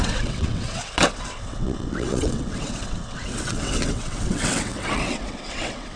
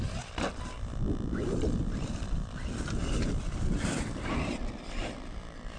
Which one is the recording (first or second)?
second